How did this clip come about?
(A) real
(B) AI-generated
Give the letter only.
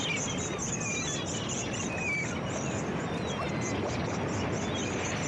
A